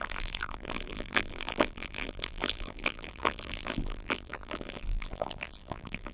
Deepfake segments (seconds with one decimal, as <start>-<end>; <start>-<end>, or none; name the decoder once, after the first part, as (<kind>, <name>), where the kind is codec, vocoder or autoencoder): 0.0-6.1 (vocoder, BigVGAN v2)